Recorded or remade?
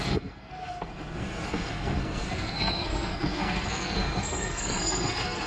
remade